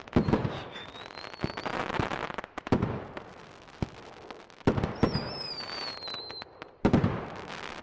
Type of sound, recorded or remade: recorded